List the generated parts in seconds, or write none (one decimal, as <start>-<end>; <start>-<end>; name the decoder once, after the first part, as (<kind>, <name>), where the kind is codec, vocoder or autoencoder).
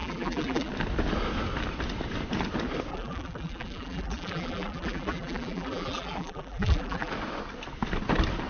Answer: 0.0-0.7 (vocoder, BigVGAN v2); 2.9-7.1